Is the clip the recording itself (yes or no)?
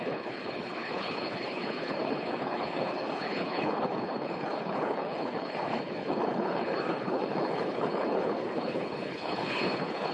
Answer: no